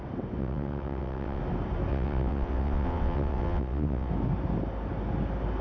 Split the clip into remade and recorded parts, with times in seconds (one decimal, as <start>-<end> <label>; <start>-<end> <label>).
0.0-0.4 recorded; 0.4-1.4 remade; 1.4-1.9 recorded; 1.9-4.1 remade; 4.1-5.6 recorded